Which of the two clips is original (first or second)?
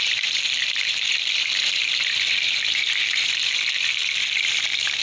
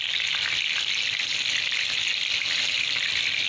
second